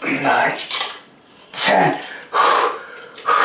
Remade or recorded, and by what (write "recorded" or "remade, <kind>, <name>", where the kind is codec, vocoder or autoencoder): recorded